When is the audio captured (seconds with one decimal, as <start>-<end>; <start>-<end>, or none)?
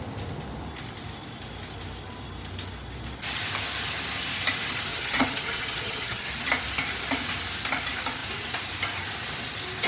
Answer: 0.0-4.9; 6.3-9.9